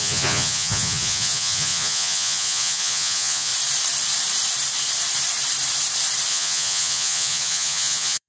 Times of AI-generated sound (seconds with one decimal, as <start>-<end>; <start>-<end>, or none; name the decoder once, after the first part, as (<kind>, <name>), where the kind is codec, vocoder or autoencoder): 0.0-3.5 (vocoder, Vocos); 6.3-8.3

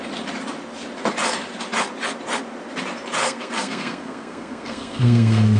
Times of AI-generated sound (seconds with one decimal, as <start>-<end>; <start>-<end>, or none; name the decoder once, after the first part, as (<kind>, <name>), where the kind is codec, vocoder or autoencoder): 3.2-5.6 (codec, SNAC)

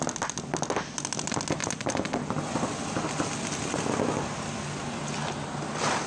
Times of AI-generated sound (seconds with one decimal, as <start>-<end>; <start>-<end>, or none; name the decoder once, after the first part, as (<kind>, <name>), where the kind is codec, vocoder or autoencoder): none

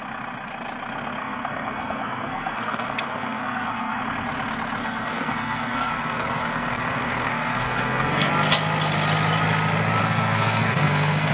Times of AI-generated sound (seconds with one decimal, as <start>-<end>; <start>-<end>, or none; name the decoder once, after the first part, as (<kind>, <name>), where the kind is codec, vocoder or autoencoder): 1.2-4.0 (codec, SNAC); 4.8-8.3; 10.0-11.3

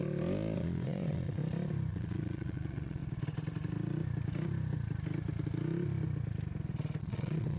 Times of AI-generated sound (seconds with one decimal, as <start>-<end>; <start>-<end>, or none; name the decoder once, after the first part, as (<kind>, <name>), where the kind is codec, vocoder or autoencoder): 0.6-1.4 (vocoder, Vocos); 1.9-3.0; 7.0-7.6

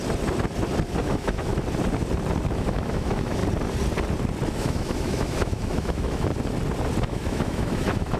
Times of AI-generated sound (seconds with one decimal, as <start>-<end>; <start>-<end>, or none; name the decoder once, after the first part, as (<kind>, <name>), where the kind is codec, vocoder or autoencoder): 1.0-1.5 (autoencoder, DAC-VAE); 2.5-3.4; 4.5-6.3; 7.0-8.2

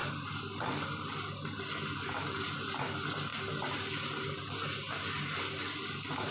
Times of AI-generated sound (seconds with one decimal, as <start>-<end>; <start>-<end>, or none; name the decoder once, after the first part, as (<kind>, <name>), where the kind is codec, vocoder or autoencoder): none

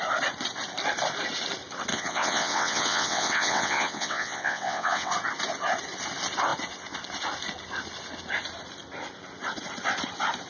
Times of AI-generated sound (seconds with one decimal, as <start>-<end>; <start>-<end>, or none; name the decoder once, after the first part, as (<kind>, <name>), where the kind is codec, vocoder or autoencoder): 1.9-5.1 (vocoder, WaveNeXt)